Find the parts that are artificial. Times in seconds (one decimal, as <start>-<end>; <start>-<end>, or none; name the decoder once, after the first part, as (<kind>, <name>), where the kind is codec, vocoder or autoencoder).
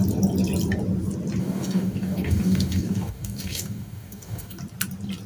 1.4-4.6 (codec, DAC)